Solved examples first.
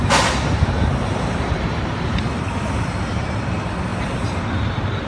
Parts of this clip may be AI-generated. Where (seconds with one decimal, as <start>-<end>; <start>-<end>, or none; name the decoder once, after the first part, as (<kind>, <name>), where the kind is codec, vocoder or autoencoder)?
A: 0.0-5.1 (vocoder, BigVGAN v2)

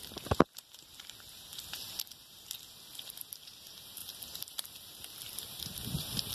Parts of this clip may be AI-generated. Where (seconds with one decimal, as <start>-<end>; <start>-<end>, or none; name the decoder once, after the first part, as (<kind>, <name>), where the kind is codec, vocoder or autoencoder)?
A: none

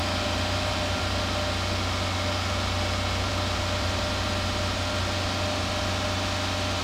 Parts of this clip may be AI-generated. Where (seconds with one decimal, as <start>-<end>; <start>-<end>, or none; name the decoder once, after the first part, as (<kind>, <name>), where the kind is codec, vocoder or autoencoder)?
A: 0.0-1.2 (vocoder, BigVGAN v2)

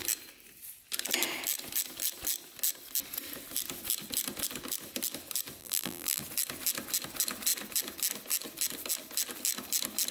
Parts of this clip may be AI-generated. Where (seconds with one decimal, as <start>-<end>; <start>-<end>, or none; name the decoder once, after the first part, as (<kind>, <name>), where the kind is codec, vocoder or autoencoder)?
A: 5.6-6.2 (vocoder, BigVGAN v2)

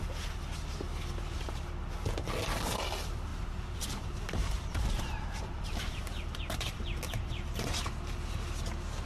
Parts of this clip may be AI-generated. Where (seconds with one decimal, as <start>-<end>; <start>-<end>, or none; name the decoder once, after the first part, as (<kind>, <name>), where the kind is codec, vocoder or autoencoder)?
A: 3.3-6.0 (vocoder, BigVGAN v2)

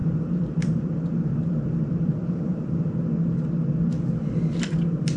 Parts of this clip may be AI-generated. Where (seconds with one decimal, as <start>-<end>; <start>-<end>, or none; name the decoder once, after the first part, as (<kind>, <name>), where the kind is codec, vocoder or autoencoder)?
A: 0.0-3.0 (vocoder, BigVGAN v2)